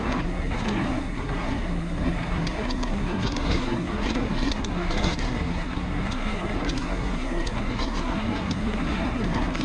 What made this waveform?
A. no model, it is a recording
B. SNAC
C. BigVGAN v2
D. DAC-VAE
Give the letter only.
B